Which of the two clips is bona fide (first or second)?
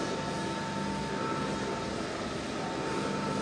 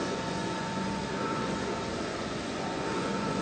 first